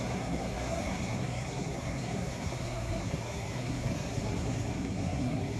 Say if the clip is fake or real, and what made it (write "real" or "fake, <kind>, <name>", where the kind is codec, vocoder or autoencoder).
fake, codec, SNAC